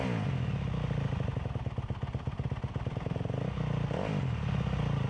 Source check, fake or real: real